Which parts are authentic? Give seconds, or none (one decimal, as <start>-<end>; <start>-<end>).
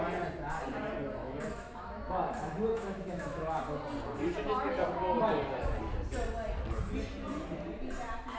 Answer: 0.0-1.2; 3.6-8.4